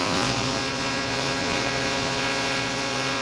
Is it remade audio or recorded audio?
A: remade